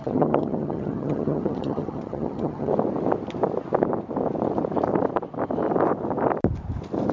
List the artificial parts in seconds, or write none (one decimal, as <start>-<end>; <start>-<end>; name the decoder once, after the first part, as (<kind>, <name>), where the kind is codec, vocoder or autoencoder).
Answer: 0.0-2.7 (vocoder, HiFi-GAN)